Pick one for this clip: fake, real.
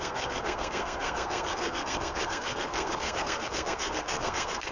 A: fake